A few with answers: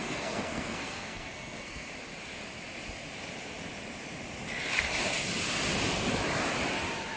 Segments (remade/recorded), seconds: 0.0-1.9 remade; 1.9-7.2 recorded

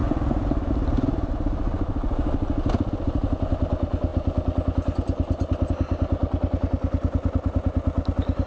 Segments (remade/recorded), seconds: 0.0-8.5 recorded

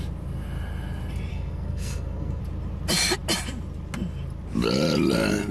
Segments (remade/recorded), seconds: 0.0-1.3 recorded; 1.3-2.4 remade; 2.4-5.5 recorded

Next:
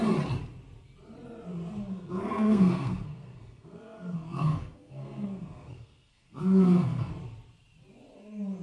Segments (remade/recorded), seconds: 0.0-1.9 recorded; 1.9-7.1 remade; 7.1-8.6 recorded